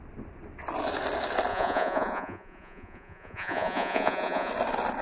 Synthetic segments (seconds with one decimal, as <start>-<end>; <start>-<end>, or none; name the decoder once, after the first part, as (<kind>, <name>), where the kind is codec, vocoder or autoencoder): 1.5-4.5 (vocoder, Vocos)